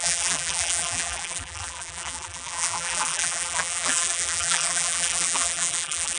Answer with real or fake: fake